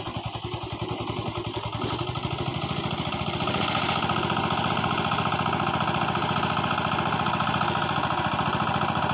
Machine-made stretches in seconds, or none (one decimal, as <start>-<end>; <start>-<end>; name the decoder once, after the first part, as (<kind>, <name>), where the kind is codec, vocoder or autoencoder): none